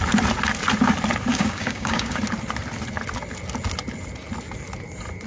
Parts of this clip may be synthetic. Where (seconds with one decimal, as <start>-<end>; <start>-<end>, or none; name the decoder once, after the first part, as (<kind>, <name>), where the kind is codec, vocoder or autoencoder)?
1.3-2.2 (codec, DAC)